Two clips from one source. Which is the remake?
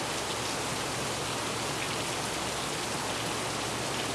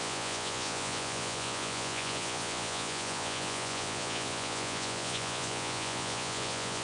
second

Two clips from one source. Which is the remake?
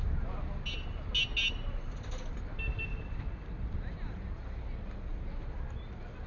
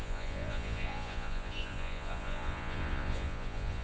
second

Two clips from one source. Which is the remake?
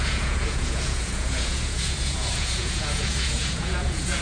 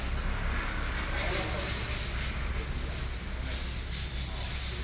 first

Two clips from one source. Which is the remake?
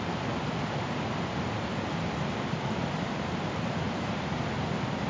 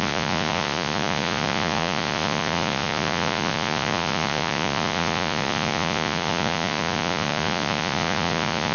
second